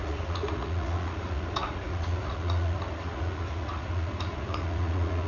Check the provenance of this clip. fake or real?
fake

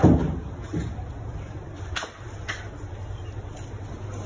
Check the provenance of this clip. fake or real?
real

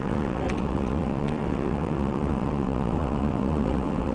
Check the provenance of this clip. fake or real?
fake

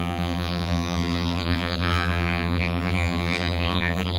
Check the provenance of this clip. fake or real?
fake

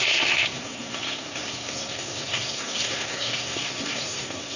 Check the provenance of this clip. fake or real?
fake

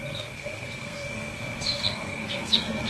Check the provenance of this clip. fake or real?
fake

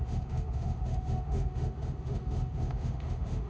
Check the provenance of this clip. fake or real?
fake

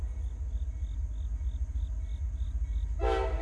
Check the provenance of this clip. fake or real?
real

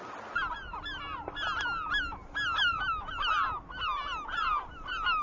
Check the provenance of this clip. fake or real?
real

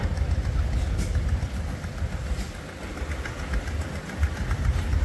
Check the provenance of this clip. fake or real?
real